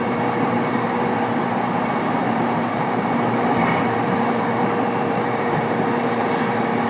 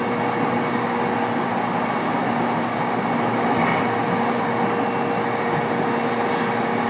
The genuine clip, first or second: second